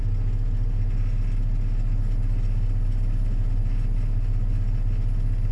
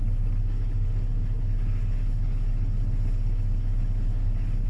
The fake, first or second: second